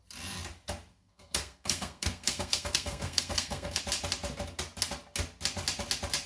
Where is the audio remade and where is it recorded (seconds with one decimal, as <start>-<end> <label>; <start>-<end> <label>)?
0.0-0.9 recorded; 0.9-3.8 remade; 3.8-6.3 recorded